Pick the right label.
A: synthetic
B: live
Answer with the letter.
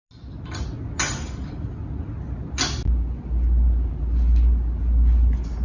B